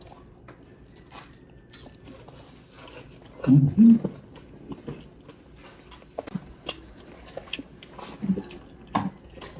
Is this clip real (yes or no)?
yes